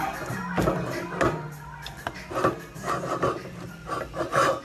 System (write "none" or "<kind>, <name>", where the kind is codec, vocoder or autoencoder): none